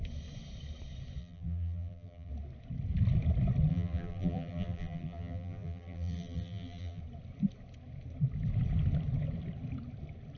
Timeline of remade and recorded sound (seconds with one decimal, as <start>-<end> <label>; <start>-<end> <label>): 0.0-1.2 recorded; 1.2-2.3 remade; 2.3-3.7 recorded; 3.7-7.0 remade; 7.0-10.4 recorded

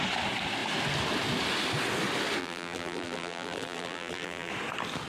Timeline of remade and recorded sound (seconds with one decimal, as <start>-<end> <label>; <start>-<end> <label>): 0.0-2.4 recorded; 2.4-4.5 remade; 4.5-5.1 recorded